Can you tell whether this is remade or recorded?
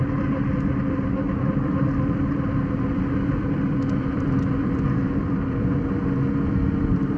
remade